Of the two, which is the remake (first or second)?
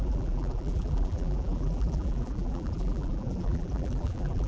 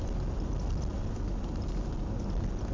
first